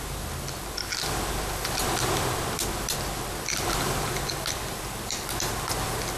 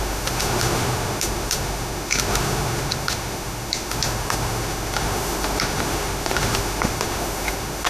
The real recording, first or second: first